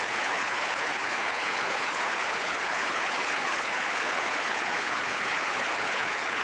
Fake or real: fake